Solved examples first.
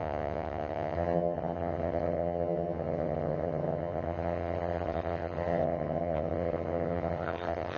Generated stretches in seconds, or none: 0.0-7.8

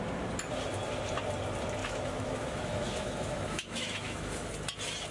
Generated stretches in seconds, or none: 1.8-4.5

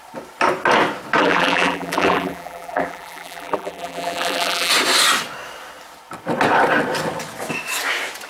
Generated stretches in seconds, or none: 1.2-4.7

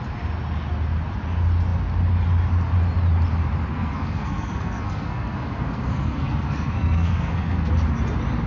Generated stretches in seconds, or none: 3.7-7.7

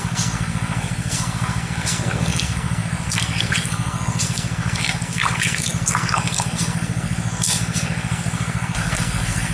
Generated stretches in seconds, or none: 0.0-9.5

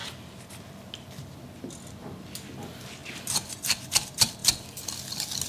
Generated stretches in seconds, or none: 4.4-4.9

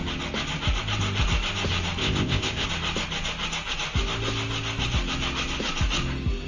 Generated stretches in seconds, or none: 2.0-2.7